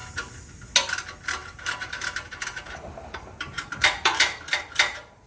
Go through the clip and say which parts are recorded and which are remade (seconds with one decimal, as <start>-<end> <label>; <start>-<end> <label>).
0.0-0.9 recorded; 0.9-5.3 remade

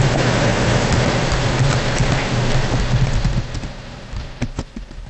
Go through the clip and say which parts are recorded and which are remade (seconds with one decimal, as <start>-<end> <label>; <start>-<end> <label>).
0.0-0.5 remade; 0.5-3.6 recorded; 3.6-5.1 remade

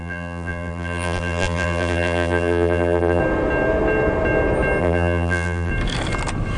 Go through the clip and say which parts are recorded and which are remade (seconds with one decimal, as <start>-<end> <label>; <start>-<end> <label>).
0.0-3.2 remade; 3.2-4.8 recorded; 4.8-5.7 remade; 5.7-6.6 recorded

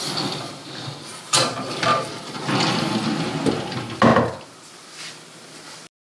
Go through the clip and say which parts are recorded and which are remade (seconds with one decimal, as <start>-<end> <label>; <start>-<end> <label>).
0.0-1.1 recorded; 1.1-2.1 remade; 2.1-6.1 recorded

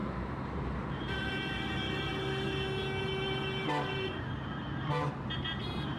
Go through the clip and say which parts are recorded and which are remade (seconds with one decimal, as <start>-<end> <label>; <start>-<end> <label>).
0.0-2.1 remade; 2.1-3.7 recorded; 3.7-6.0 remade

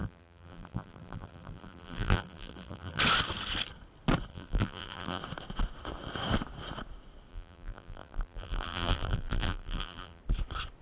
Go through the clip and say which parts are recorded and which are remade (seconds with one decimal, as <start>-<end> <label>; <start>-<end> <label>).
0.0-3.0 remade; 3.0-4.3 recorded; 4.3-5.2 remade; 5.2-7.3 recorded; 7.3-10.2 remade; 10.2-10.8 recorded